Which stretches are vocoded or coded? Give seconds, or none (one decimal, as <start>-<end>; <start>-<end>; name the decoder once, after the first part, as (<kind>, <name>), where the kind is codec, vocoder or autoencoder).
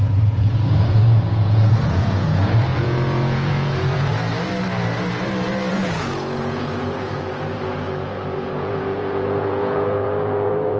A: 0.0-4.1 (vocoder, Vocos); 5.7-10.8